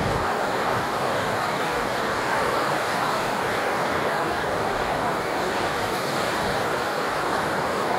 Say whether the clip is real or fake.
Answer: fake